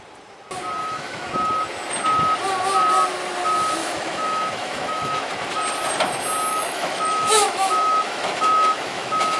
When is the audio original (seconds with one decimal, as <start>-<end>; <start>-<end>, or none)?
0.0-0.8; 1.3-3.8; 5.3-6.5

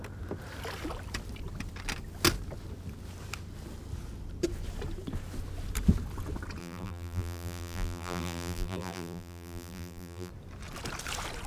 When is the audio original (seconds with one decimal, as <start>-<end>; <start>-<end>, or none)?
0.0-6.6; 10.3-11.5

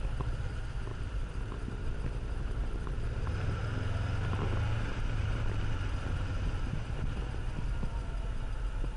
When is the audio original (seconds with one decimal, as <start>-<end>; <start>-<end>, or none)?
0.0-0.9; 3.6-4.9; 6.9-9.0

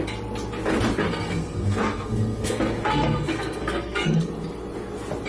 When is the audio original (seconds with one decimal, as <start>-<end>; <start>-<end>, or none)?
0.0-1.1; 4.3-5.3

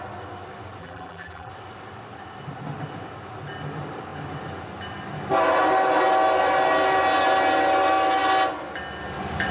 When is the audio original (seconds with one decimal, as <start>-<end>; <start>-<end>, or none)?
0.0-0.8; 1.5-9.5

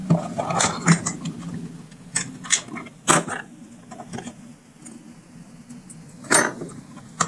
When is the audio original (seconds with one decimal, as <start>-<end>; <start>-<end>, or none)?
0.0-7.3